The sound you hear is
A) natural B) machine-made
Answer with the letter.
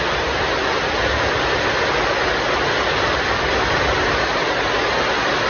A